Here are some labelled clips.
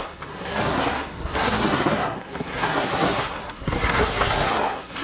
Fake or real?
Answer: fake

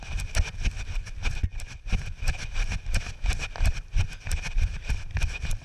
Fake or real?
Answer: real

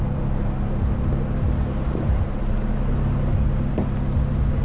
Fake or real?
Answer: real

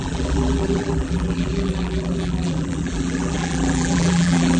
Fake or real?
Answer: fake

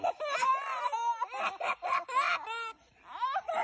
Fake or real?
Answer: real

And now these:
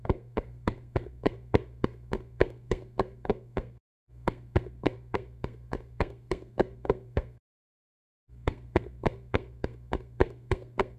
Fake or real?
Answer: fake